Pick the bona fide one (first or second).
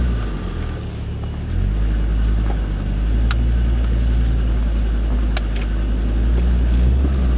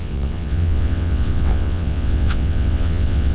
first